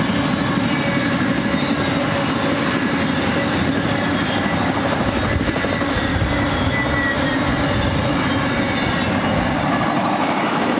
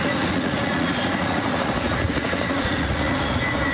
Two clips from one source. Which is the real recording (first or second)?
first